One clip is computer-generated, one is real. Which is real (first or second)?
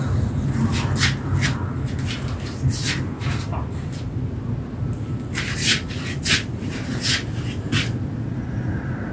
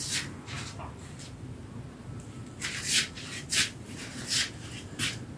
first